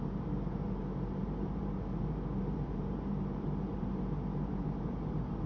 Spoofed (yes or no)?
yes